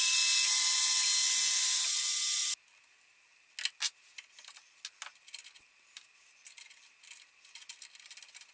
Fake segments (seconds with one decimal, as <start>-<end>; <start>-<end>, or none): none